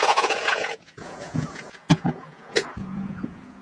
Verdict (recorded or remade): remade